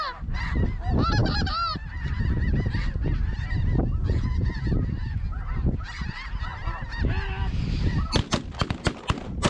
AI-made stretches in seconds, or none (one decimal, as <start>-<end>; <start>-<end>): 4.0-4.7